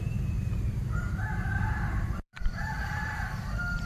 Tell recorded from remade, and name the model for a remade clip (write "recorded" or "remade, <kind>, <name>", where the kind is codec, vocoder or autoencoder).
remade, vocoder, BigVGAN v2